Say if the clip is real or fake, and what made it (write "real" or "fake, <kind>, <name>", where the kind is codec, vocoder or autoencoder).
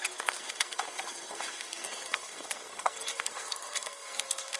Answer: fake, codec, SNAC